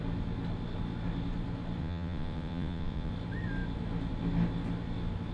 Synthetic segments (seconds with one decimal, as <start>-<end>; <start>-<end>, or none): 1.8-3.1